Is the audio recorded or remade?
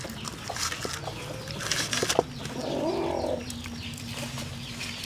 recorded